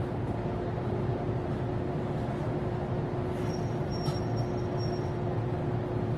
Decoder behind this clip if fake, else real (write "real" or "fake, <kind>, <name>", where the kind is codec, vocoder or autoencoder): real